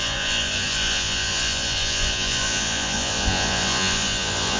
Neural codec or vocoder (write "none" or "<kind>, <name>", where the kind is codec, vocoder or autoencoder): vocoder, Vocos